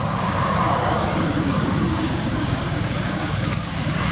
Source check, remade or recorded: remade